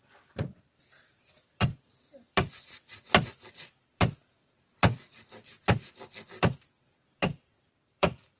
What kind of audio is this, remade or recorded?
remade